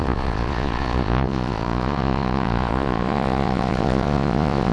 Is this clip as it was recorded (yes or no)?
no